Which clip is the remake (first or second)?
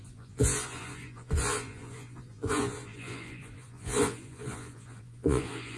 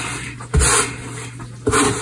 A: first